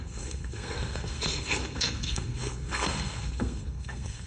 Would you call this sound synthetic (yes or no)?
yes